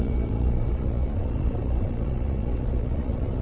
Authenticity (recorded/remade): remade